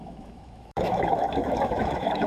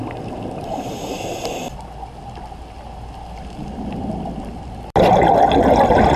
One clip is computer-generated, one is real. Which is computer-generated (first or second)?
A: first